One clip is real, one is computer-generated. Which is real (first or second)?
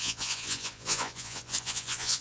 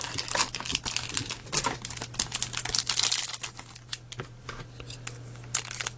second